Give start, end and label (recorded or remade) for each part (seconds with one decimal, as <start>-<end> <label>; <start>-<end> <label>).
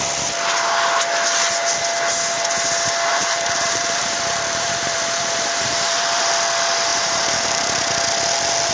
0.0-3.1 recorded; 3.1-6.3 remade; 6.3-6.9 recorded; 6.9-7.8 remade; 7.8-8.7 recorded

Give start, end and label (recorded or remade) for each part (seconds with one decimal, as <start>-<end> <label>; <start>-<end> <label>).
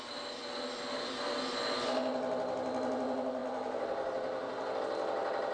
0.0-5.5 recorded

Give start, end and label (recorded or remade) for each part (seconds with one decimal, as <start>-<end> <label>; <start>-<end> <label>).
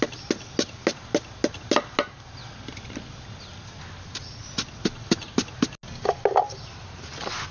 0.0-7.5 recorded